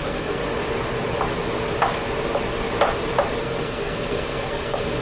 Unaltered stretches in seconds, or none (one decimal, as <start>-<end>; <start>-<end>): 0.4-3.4